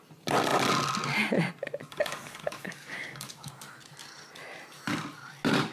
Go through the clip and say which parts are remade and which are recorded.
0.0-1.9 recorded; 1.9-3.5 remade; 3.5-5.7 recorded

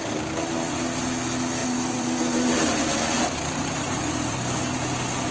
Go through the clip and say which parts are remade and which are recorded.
0.0-1.6 recorded; 1.6-4.4 remade; 4.4-5.3 recorded

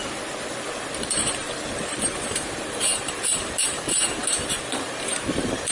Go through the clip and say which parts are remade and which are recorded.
0.0-5.7 remade

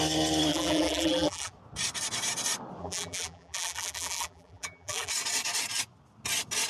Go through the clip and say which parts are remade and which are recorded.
0.0-0.5 recorded; 0.5-1.5 remade; 1.5-2.8 recorded; 2.8-5.1 remade; 5.1-6.7 recorded